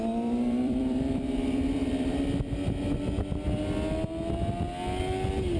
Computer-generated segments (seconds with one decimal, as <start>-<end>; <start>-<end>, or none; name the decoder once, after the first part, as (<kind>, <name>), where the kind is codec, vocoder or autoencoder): 0.0-2.1 (vocoder, BigVGAN v2)